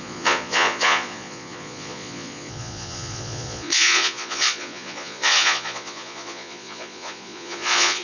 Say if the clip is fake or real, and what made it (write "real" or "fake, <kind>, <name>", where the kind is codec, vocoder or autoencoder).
fake, vocoder, Vocos